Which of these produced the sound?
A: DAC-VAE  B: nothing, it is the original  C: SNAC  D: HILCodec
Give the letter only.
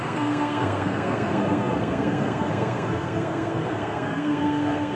C